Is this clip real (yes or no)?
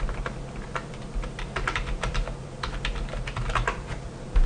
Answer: no